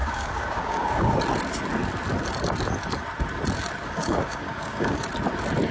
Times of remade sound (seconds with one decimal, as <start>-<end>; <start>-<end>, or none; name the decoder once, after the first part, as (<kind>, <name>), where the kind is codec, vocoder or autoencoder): 0.0-1.2 (codec, DAC); 3.8-5.1